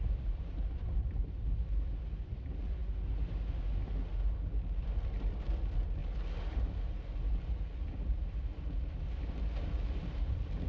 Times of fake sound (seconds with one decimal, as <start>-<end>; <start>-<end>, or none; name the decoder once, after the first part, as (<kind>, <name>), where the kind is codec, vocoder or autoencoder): 0.0-2.8 (vocoder, BigVGAN v2); 4.8-6.0; 10.0-10.7